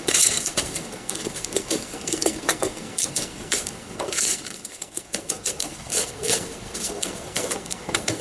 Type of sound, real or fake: fake